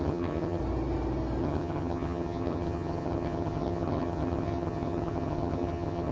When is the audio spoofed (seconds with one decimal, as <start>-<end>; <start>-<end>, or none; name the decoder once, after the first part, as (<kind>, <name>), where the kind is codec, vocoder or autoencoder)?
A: 0.0-0.6 (vocoder, HiFi-GAN); 1.4-6.1